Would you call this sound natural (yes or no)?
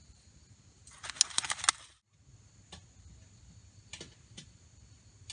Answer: yes